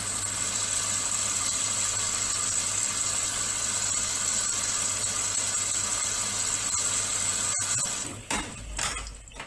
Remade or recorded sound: recorded